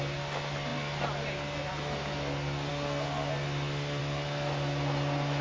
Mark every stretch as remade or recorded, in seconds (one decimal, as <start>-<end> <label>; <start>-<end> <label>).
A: 0.0-5.4 recorded